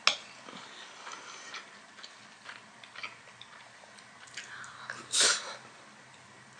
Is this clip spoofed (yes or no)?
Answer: no